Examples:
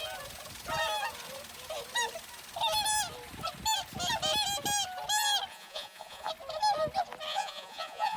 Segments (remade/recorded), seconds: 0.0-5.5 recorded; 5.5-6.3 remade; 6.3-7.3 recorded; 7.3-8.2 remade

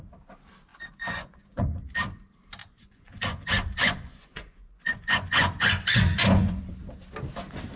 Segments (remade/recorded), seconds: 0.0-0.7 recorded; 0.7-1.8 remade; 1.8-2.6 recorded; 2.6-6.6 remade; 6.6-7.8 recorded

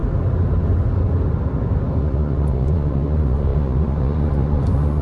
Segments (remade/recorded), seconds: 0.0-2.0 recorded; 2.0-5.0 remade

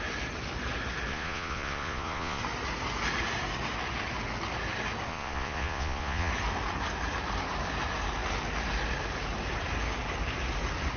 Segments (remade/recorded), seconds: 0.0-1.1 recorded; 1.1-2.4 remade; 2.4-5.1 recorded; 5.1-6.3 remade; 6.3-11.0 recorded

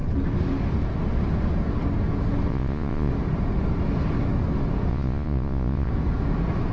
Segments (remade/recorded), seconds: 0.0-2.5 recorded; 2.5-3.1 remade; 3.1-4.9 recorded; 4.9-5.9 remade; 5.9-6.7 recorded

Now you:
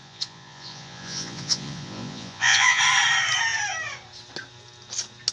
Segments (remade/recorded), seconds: 0.0-2.8 remade; 2.8-5.3 recorded